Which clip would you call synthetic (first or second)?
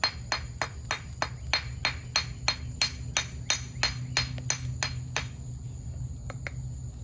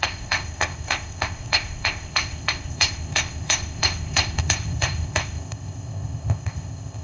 second